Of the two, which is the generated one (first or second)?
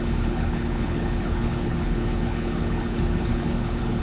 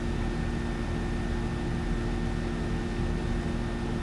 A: first